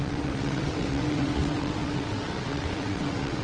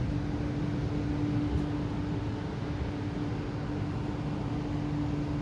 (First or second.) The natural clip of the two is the second